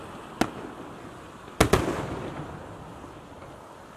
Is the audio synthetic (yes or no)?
no